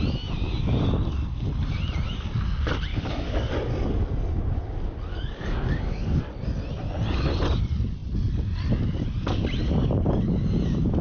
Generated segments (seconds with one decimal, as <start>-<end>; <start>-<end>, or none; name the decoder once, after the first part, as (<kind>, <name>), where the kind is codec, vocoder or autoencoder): 2.9-3.5 (codec, DAC); 5.1-6.2